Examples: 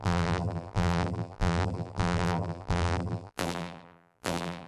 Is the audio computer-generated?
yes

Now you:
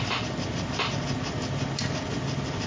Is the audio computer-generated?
no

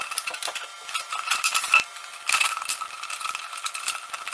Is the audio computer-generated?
no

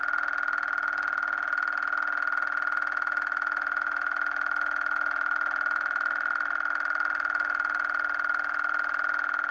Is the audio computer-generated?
no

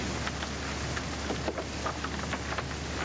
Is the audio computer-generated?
no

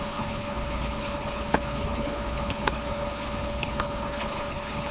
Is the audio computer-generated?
yes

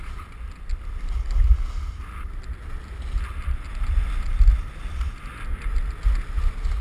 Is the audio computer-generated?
no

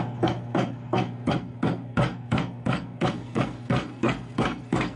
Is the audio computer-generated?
yes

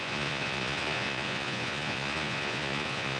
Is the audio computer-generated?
yes